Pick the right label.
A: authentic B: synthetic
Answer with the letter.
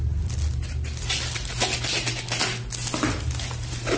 A